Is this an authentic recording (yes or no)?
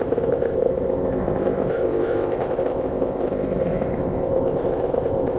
no